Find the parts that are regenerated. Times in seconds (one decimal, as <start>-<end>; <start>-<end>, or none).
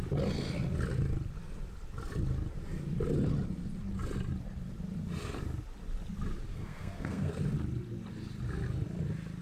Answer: 6.5-7.4